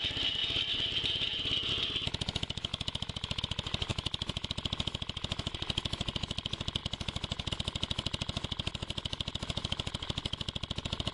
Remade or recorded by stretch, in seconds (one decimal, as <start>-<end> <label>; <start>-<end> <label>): 0.0-2.7 recorded; 2.7-3.4 remade; 3.4-3.9 recorded; 3.9-4.5 remade; 4.5-11.1 recorded